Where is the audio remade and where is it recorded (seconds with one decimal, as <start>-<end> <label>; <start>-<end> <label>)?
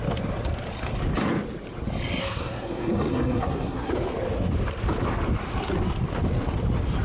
0.0-2.2 recorded; 2.2-3.9 remade; 3.9-7.0 recorded